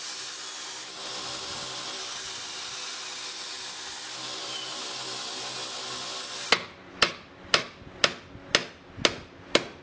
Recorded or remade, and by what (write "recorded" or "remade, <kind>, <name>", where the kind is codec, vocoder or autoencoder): recorded